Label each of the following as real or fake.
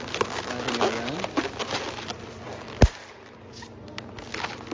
real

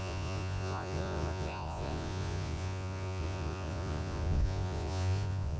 fake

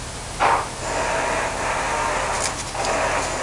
real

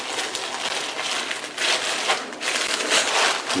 real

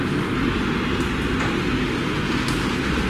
real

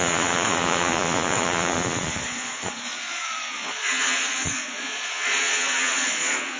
fake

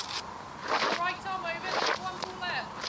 real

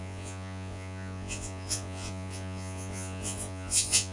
fake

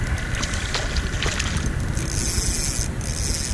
real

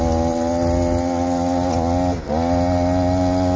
real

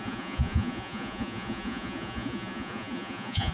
fake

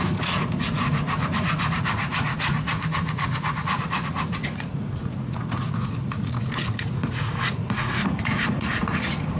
fake